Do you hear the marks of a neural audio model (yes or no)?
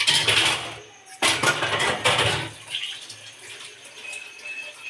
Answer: no